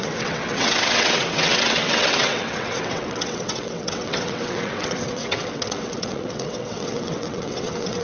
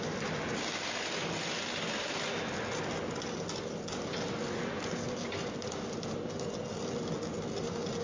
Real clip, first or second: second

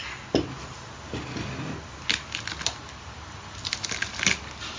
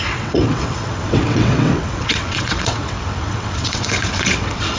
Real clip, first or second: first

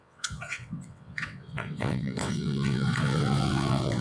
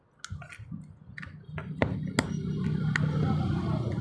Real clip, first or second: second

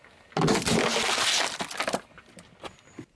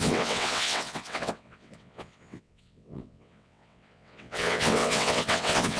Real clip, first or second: first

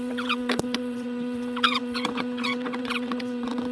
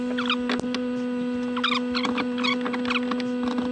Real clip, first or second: second